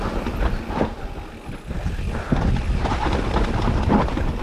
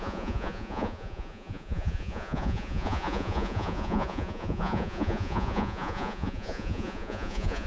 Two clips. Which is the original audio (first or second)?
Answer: first